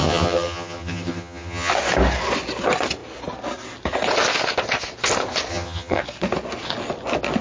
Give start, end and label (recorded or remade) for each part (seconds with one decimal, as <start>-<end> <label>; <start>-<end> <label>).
0.0-1.7 remade; 1.7-5.5 recorded; 5.5-6.0 remade; 6.0-7.4 recorded